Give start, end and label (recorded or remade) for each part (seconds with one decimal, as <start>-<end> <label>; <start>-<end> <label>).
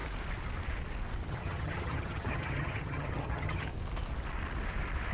0.0-1.3 recorded; 1.3-3.7 remade; 3.7-5.1 recorded